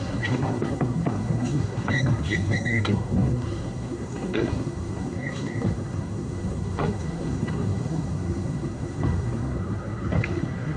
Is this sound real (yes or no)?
no